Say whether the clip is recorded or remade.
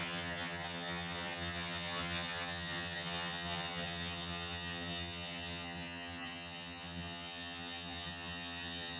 remade